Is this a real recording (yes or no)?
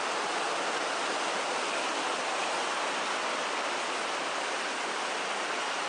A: yes